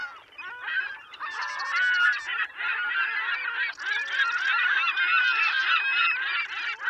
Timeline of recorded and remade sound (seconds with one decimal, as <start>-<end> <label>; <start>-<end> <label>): 0.0-6.9 recorded